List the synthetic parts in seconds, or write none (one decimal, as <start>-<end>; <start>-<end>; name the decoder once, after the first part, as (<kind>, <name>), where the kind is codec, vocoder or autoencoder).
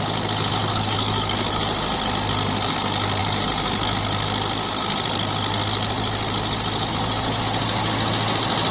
0.6-1.6 (codec, DAC)